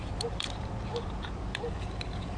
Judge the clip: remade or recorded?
remade